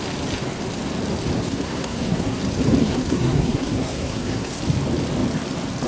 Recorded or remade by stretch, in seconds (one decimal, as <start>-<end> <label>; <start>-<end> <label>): 0.0-1.4 recorded; 1.4-2.4 remade; 2.4-2.8 recorded; 2.8-4.5 remade; 4.5-5.9 recorded